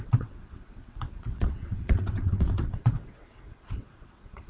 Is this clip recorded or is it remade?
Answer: remade